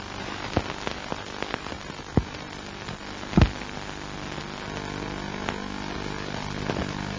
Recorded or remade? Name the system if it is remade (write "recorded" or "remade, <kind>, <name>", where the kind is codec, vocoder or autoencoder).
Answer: recorded